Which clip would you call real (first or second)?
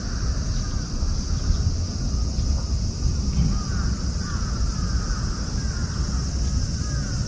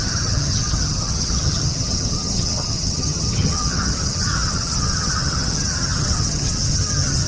first